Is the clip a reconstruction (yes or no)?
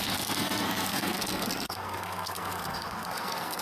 yes